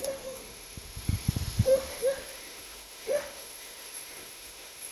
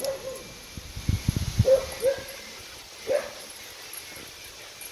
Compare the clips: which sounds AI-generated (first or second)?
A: first